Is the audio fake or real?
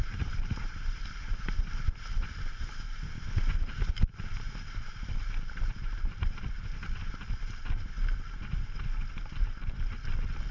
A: real